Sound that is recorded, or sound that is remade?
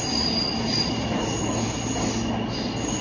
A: recorded